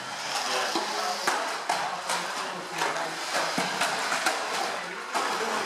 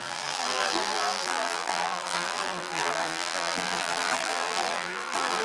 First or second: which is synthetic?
second